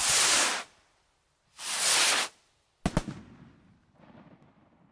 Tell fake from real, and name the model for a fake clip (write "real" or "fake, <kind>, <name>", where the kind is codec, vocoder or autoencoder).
real